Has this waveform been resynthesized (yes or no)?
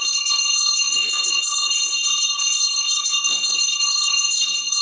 yes